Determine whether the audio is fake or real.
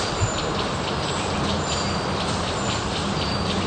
real